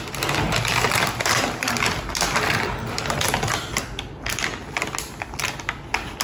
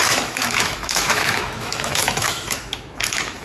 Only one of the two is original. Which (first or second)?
first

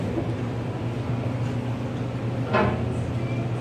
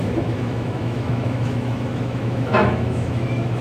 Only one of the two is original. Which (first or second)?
first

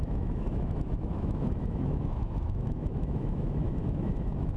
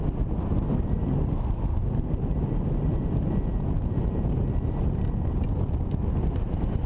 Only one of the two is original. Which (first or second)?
second